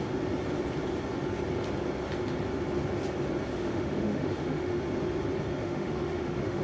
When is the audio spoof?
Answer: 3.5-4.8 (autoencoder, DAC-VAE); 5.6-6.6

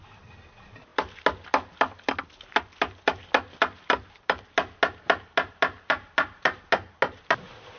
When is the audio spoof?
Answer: none

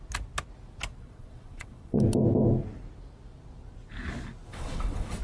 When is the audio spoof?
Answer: 1.0-2.0 (vocoder, WaveNeXt); 4.5-5.2

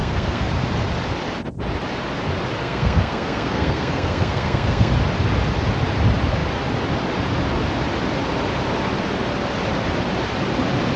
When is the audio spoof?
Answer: 0.0-0.5 (codec, SNAC); 2.6-4.9